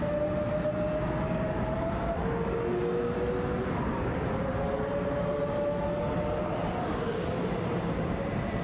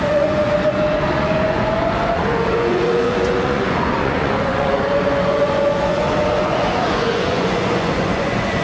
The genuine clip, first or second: first